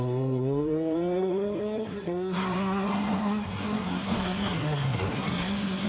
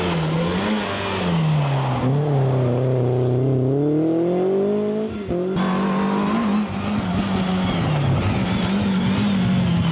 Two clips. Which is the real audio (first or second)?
second